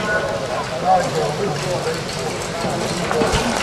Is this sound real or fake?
real